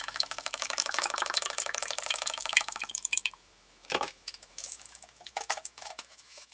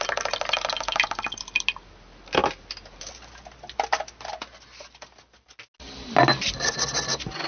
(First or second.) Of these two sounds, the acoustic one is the second